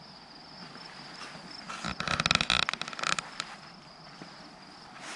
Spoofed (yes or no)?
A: no